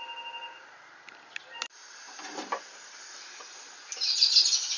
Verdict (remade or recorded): recorded